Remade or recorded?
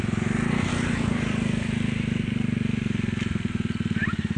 recorded